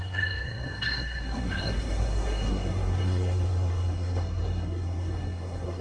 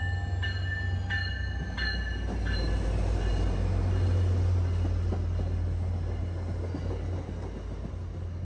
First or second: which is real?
second